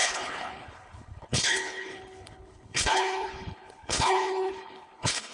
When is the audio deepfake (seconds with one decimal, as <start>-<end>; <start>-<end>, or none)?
0.0-5.3